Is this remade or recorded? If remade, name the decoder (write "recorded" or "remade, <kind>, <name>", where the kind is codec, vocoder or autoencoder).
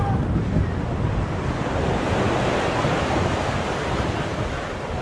recorded